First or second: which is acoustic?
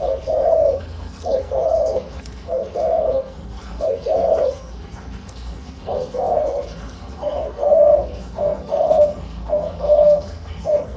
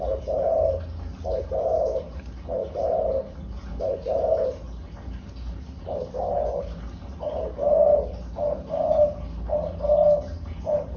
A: second